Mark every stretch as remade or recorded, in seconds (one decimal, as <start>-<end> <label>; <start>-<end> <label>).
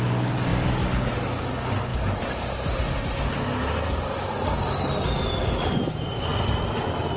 0.0-1.9 recorded; 1.9-2.8 remade; 2.8-6.3 recorded; 6.3-6.8 remade; 6.8-7.2 recorded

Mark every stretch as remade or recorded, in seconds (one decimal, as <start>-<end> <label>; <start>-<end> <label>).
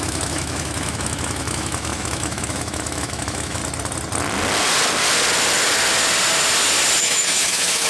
0.0-3.6 remade; 3.6-7.0 recorded; 7.0-7.9 remade